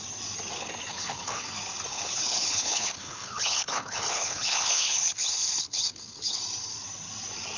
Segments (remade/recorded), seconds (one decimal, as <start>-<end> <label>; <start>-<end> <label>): 0.0-0.9 recorded; 0.9-1.5 remade; 1.5-1.9 recorded; 1.9-6.4 remade; 6.4-7.6 recorded